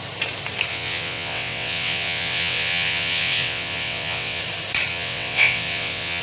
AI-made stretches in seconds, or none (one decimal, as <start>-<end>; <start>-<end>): 0.7-4.4; 4.9-6.2